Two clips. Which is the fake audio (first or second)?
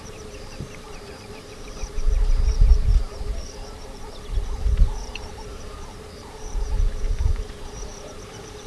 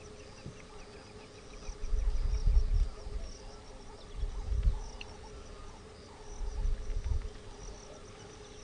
first